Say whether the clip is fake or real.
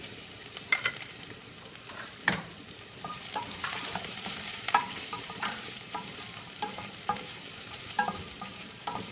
fake